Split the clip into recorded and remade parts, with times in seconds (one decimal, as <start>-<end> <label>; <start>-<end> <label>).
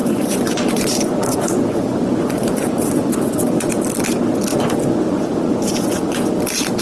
0.0-3.8 remade; 3.8-4.5 recorded; 4.5-6.3 remade; 6.3-6.8 recorded